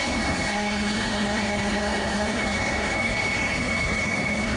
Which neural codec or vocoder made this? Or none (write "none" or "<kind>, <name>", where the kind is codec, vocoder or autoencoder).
codec, SNAC